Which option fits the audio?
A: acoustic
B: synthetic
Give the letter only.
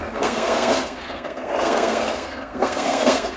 B